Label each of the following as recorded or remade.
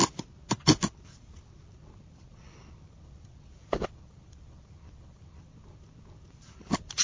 recorded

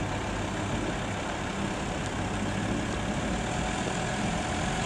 recorded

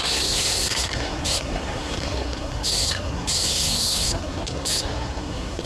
remade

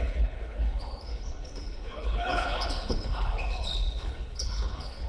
remade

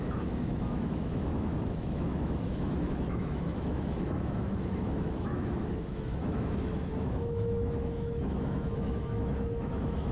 remade